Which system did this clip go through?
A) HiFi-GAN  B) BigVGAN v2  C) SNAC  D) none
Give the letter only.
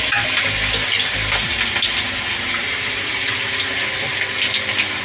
D